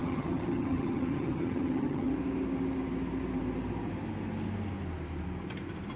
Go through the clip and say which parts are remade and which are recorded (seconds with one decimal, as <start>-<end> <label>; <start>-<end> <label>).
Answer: 0.0-2.1 remade; 2.1-6.0 recorded